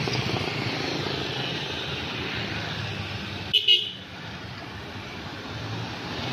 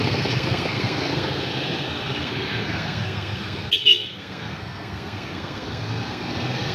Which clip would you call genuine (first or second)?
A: first